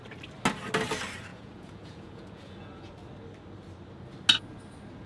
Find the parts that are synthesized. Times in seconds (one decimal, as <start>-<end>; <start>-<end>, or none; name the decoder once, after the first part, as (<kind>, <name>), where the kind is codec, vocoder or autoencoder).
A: 1.3-2.9 (vocoder, Vocos)